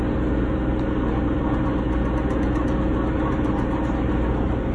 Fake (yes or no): no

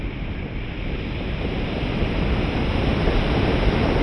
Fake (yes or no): no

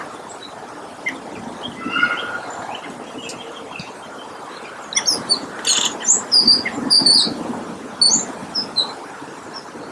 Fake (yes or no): no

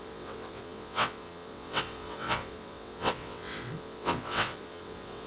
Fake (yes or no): yes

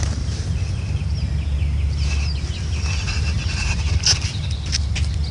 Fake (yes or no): no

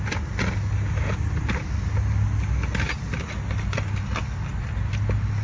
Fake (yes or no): no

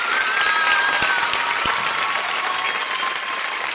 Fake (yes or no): no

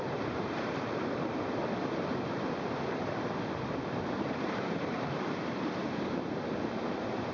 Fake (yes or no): yes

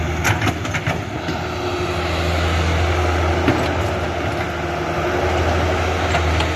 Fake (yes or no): no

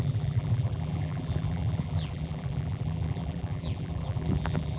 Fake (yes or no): yes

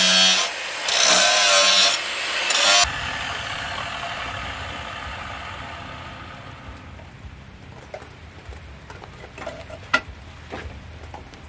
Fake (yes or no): no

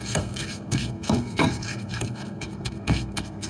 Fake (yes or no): yes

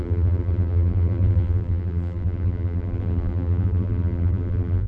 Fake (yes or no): yes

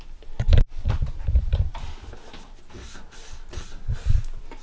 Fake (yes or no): no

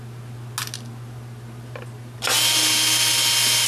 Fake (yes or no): no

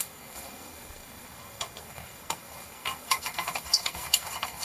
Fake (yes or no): yes